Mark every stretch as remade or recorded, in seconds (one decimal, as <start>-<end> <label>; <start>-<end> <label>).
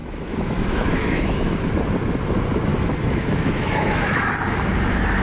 0.0-1.7 remade; 1.7-2.7 recorded; 2.7-4.3 remade; 4.3-5.2 recorded